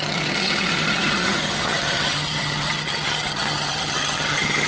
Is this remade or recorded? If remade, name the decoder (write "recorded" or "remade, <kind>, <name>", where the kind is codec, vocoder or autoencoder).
remade, vocoder, HiFi-GAN